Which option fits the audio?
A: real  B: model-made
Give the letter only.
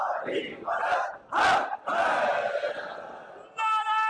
A